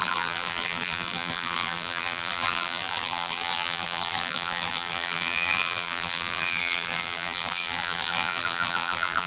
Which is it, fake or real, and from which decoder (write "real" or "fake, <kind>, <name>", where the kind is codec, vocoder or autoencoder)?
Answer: fake, vocoder, BigVGAN v2